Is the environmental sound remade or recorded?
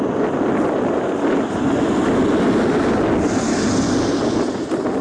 recorded